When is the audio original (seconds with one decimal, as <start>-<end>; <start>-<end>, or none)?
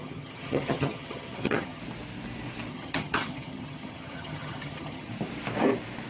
1.8-2.7; 5.1-6.1